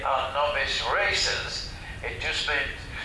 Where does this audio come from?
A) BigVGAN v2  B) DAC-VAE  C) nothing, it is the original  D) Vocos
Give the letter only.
C